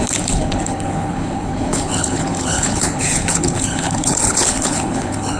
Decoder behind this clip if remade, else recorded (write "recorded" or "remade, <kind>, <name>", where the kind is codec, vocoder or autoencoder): remade, codec, HILCodec